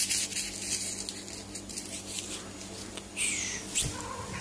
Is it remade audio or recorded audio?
recorded